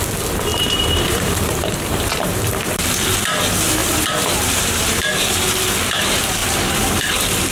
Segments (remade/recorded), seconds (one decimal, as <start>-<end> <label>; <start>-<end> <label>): 0.0-0.5 recorded; 0.5-2.8 remade; 2.8-3.8 recorded; 3.8-5.4 remade; 5.4-7.5 recorded